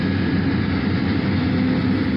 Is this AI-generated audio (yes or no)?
no